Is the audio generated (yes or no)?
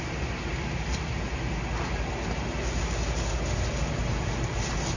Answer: no